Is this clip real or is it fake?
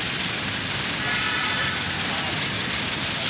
real